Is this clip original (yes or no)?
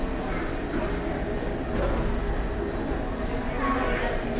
yes